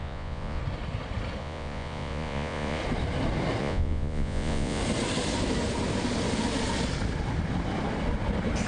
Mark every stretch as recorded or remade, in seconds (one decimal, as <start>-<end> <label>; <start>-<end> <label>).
0.0-0.6 remade; 0.6-1.4 recorded; 1.4-2.8 remade; 2.8-3.6 recorded; 3.6-4.8 remade; 4.8-8.7 recorded

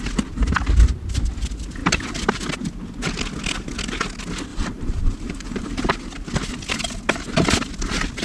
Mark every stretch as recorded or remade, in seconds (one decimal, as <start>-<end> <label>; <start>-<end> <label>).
0.0-4.5 recorded; 4.5-5.9 remade; 5.9-8.2 recorded

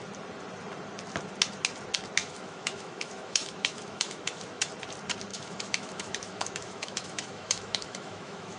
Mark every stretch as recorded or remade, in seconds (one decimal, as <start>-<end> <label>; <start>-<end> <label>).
0.0-2.2 recorded; 2.2-4.7 remade; 4.7-5.3 recorded; 5.3-8.6 remade

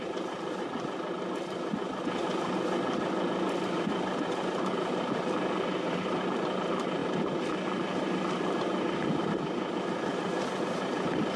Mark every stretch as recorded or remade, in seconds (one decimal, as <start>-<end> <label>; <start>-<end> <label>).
0.0-11.4 recorded

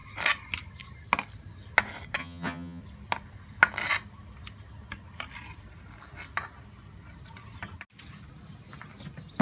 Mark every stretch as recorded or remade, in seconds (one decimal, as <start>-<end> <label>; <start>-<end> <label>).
0.0-2.2 recorded; 2.2-2.8 remade; 2.8-9.4 recorded

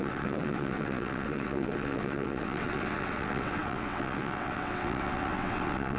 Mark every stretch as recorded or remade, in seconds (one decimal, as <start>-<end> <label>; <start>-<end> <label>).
0.0-6.0 remade

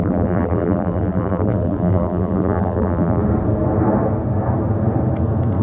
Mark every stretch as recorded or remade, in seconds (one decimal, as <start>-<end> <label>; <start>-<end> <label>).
0.0-3.2 remade; 3.2-5.6 recorded